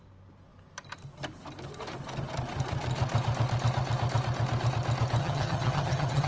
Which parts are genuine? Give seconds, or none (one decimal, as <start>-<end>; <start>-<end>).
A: 0.0-5.2